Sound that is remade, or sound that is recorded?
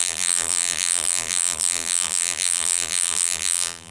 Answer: remade